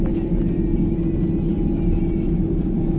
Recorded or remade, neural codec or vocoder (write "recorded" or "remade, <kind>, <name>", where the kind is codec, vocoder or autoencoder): recorded